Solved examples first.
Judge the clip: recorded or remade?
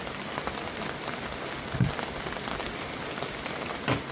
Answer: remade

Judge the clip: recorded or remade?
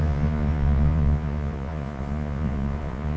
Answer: remade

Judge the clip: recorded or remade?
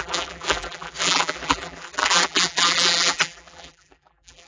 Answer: remade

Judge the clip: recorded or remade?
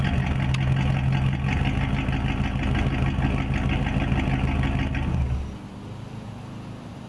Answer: recorded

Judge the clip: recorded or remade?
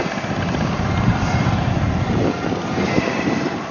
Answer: remade